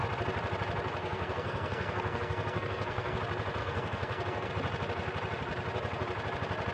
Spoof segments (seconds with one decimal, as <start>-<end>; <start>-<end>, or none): 1.0-3.2; 3.6-4.5